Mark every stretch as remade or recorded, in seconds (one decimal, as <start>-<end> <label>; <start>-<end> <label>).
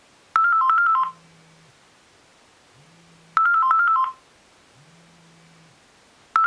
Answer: 0.0-6.5 recorded